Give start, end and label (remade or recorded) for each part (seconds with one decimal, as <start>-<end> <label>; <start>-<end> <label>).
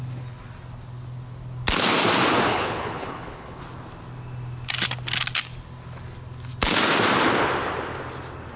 0.0-2.5 recorded; 2.5-3.6 remade; 3.6-8.6 recorded